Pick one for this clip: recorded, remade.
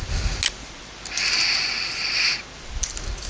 recorded